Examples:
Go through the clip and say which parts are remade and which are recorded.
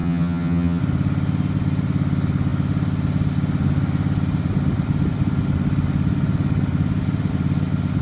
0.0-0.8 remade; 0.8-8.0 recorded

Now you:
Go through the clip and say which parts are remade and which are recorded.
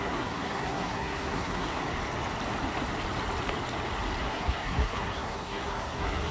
0.0-1.8 remade; 1.8-4.2 recorded; 4.2-6.3 remade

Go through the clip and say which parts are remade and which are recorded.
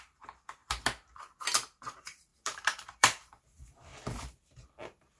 0.0-0.6 remade; 0.6-1.8 recorded; 1.8-5.2 remade